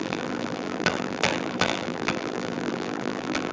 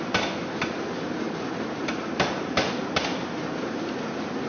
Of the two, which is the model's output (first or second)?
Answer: first